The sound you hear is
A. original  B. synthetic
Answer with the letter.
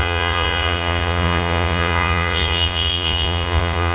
B